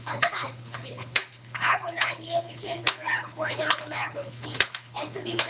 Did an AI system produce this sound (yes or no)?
yes